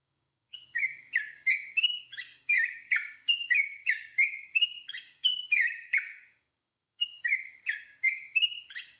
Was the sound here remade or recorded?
remade